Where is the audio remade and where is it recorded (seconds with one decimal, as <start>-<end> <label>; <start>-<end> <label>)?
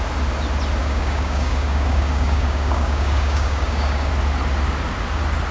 0.0-0.8 recorded; 0.8-4.1 remade; 4.1-5.5 recorded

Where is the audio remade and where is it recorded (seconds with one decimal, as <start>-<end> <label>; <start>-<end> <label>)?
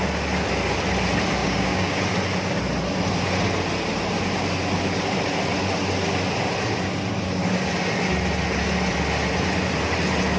0.0-1.4 recorded; 1.4-2.0 remade; 2.0-10.4 recorded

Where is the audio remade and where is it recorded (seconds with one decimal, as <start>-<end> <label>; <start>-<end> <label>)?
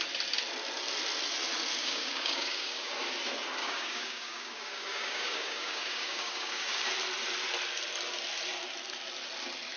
0.0-1.8 recorded; 1.8-2.9 remade; 2.9-3.6 recorded; 3.6-6.9 remade; 6.9-9.8 recorded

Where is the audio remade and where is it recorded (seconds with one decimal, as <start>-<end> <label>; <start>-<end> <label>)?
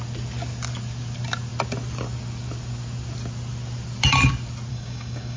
0.0-4.7 recorded; 4.7-5.4 remade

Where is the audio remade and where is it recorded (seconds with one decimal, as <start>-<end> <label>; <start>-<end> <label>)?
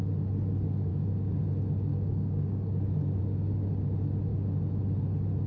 0.0-0.9 recorded; 0.9-1.4 remade; 1.4-1.9 recorded; 1.9-3.2 remade; 3.2-5.5 recorded